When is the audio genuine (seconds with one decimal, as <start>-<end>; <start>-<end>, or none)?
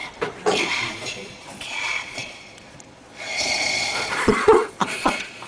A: 0.0-0.6